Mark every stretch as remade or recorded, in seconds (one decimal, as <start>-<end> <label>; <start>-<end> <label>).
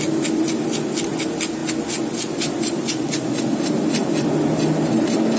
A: 0.0-5.4 recorded